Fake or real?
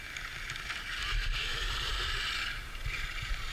real